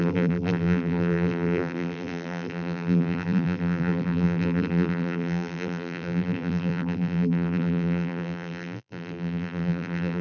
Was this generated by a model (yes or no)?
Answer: yes